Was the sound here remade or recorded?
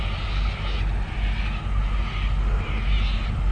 recorded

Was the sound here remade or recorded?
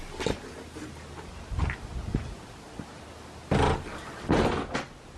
recorded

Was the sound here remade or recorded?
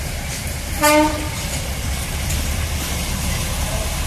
recorded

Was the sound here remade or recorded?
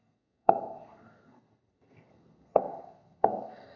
remade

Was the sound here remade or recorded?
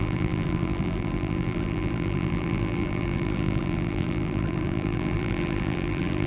remade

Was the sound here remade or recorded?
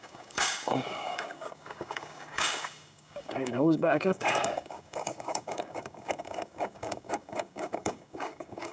remade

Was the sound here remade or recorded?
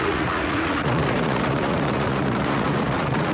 remade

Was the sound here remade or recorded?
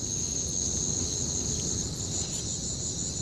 recorded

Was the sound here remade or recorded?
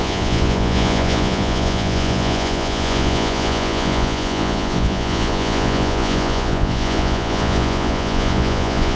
remade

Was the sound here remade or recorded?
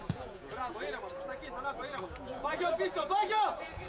remade